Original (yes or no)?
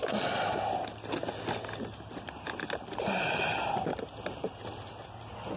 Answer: yes